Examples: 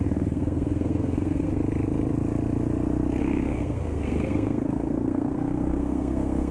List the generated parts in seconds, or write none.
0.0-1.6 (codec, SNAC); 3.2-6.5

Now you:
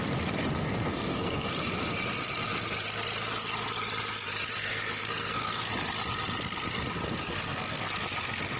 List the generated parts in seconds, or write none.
0.6-1.5 (codec, SNAC); 4.6-5.7; 7.2-7.9

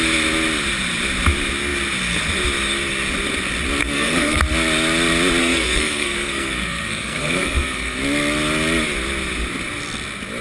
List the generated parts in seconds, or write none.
3.8-4.4 (codec, SNAC); 5.4-8.0

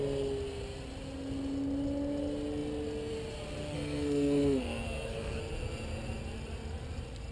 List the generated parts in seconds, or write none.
3.6-5.4 (codec, SNAC)

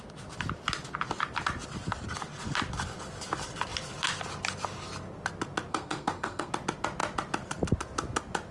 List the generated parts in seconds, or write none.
5.7-6.5 (codec, SNAC)

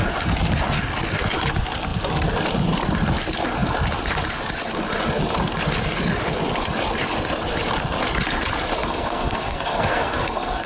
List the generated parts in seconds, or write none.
8.8-10.7 (codec, SNAC)

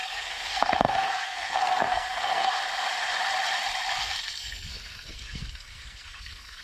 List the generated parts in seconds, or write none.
0.0-2.6 (codec, SNAC); 4.0-6.6